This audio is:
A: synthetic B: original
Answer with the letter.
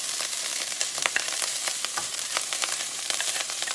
A